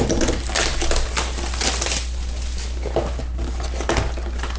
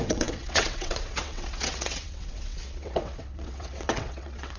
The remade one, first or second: second